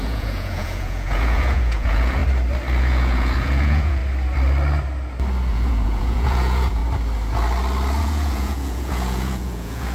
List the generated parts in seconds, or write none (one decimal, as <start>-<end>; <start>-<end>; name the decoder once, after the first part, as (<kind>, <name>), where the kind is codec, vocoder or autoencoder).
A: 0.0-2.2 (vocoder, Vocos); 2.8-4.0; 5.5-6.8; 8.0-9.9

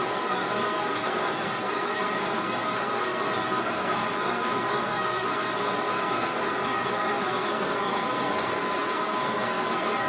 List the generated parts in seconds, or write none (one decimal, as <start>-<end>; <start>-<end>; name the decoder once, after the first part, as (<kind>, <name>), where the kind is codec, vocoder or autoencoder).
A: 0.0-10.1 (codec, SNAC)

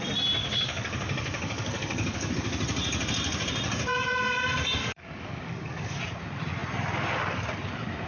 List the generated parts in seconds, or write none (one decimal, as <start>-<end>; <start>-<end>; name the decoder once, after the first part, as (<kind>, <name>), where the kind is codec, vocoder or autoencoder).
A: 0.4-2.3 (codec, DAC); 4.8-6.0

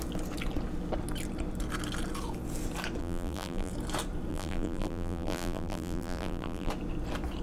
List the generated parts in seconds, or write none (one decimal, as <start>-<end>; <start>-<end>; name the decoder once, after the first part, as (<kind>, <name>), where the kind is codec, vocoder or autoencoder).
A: 3.0-3.7 (vocoder, BigVGAN v2); 4.3-6.7

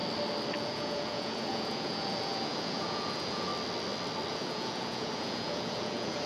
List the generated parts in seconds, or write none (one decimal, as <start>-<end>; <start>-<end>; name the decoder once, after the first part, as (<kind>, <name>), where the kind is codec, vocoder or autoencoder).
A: 0.6-3.5 (vocoder, Vocos); 4.3-6.3